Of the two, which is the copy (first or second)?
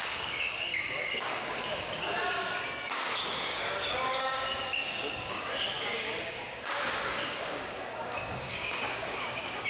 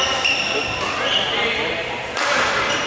first